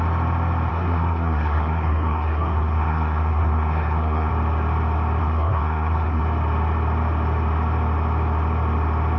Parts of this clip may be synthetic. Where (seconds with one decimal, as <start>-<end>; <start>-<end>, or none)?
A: 0.7-4.3; 5.2-6.2

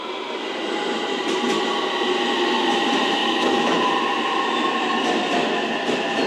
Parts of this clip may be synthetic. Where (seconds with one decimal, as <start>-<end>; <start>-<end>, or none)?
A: 3.2-3.9

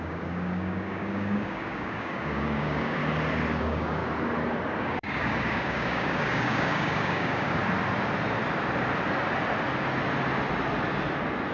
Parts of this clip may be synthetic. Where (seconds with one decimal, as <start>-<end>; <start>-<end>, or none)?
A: 0.0-3.0; 3.6-4.0; 4.8-7.6

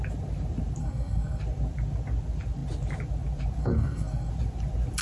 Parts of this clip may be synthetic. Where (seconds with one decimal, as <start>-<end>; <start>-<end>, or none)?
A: 0.8-1.4; 3.6-4.3

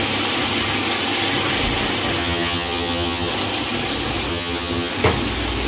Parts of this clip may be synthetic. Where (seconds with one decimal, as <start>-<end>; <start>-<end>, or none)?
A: 2.2-3.3; 4.3-4.9

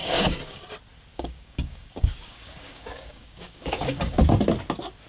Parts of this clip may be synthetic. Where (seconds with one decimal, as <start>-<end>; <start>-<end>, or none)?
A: 0.0-0.6; 1.1-4.2

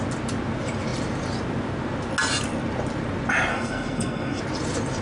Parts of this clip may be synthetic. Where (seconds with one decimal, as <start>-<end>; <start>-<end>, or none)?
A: 3.5-4.4

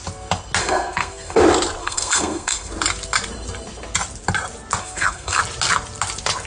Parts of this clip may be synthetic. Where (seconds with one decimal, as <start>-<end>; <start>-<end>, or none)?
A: 0.6-1.4; 1.8-2.7; 4.8-5.4